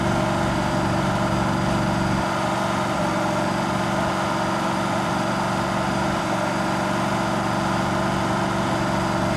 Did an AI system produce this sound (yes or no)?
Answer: no